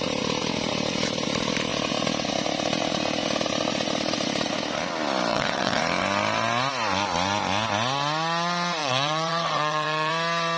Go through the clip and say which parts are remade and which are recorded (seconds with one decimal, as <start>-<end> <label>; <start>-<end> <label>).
0.0-5.3 recorded; 5.3-5.8 remade; 5.8-8.8 recorded; 8.8-10.1 remade; 10.1-10.6 recorded